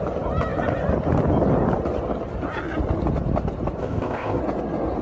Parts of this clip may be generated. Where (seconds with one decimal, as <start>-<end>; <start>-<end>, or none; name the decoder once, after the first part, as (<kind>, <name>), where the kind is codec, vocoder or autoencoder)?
3.8-4.4 (codec, ZipCodec)